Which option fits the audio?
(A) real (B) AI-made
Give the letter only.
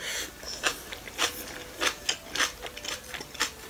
A